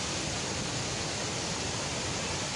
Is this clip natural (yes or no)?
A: yes